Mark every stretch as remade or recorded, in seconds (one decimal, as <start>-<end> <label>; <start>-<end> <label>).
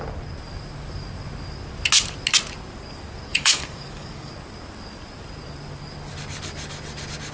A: 0.0-3.3 recorded; 3.3-4.3 remade; 4.3-7.3 recorded